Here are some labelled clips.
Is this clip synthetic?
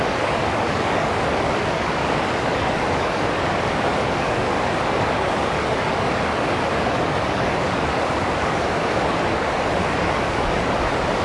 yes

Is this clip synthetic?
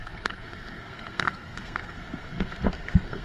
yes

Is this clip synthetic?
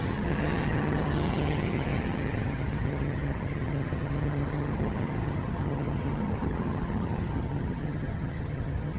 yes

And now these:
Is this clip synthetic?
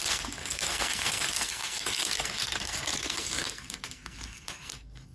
yes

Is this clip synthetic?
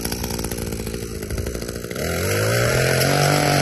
no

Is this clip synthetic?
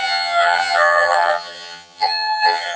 yes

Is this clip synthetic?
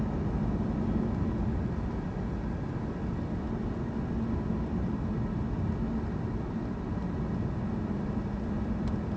no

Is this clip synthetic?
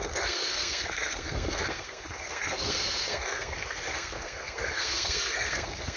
yes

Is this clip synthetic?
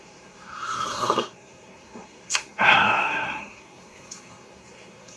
yes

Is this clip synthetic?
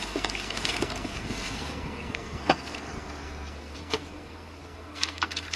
yes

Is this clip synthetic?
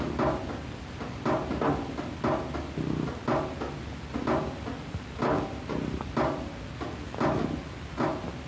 no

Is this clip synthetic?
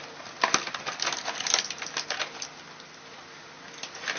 no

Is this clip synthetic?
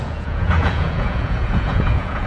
yes